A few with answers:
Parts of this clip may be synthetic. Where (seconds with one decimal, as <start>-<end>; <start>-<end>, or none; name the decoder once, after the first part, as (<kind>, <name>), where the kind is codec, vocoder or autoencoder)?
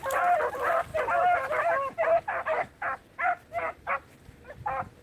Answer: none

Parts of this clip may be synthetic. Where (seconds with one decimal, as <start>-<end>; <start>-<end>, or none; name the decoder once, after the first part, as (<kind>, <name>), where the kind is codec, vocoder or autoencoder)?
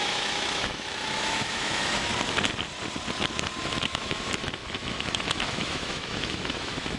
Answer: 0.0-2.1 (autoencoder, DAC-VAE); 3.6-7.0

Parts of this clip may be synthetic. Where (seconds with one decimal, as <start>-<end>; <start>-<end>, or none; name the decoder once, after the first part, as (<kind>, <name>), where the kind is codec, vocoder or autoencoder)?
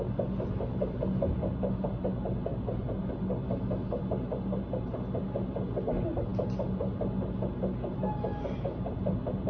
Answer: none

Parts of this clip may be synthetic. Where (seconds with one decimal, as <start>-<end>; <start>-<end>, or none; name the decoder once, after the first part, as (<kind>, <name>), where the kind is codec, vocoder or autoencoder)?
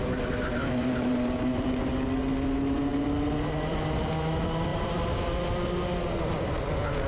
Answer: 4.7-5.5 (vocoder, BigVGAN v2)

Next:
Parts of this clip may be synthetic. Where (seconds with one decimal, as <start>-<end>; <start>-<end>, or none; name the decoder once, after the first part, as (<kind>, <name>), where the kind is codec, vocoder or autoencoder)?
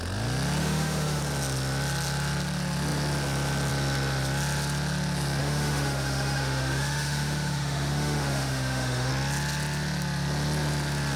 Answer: 0.6-1.2 (autoencoder, DAC-VAE); 5.4-9.1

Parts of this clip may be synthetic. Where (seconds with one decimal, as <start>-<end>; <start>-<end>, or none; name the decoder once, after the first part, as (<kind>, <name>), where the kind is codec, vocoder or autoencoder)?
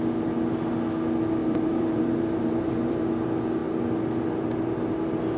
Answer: 1.4-3.1 (vocoder, BigVGAN v2)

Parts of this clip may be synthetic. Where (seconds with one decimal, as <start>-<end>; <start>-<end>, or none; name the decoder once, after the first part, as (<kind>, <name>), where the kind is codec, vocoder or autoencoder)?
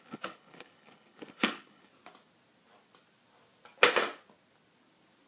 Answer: 0.0-1.9 (codec, HILCodec)